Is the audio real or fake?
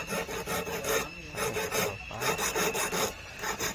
real